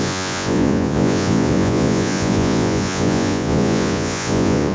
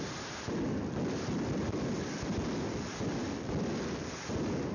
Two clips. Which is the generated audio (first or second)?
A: first